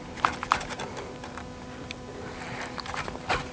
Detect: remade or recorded recorded